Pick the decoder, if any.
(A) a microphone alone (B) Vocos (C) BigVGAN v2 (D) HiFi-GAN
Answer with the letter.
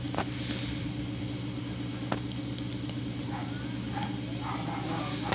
A